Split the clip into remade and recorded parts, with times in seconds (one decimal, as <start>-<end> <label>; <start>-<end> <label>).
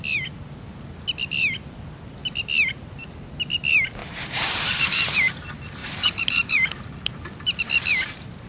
0.0-4.0 recorded; 4.0-5.3 remade; 5.3-5.8 recorded; 5.8-6.8 remade; 6.8-8.5 recorded